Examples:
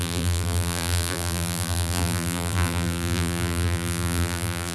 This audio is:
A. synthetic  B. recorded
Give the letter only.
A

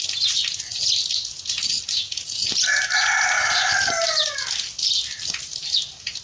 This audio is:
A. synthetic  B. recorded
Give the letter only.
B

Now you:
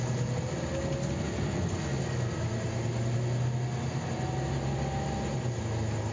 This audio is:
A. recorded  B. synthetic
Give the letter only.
A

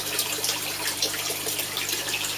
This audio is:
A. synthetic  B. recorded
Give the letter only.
A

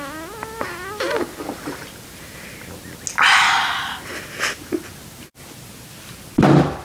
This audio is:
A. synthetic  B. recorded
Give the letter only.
B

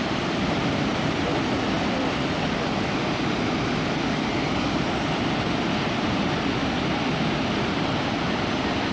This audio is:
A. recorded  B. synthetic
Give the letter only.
A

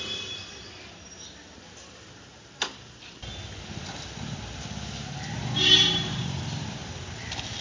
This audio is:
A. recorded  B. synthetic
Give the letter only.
A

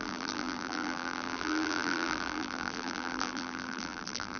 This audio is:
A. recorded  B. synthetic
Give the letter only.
B